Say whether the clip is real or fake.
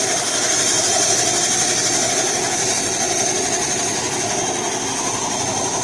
real